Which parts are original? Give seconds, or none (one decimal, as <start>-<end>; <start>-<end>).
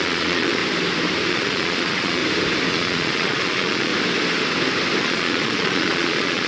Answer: 0.6-1.3; 2.2-2.7; 3.9-5.0